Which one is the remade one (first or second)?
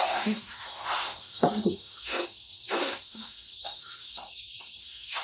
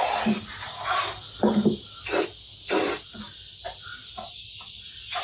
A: first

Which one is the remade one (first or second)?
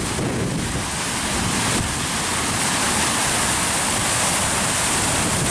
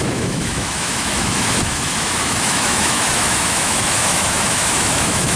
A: second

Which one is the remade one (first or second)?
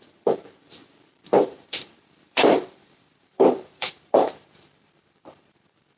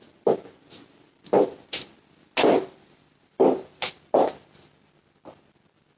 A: first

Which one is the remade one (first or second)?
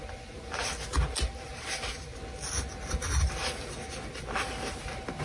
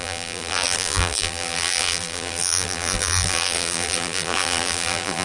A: second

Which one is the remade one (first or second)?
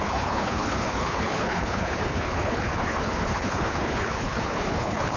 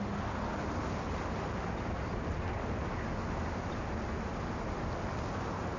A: first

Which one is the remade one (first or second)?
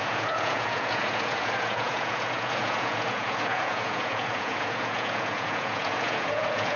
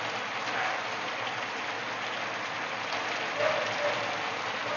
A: first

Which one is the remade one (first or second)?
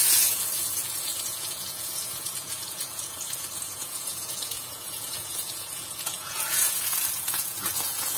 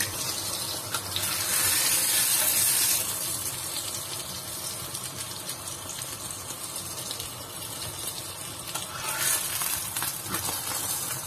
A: first